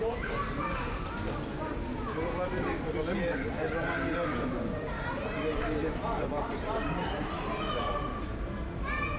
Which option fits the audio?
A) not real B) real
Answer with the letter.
B